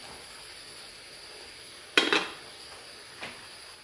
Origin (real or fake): real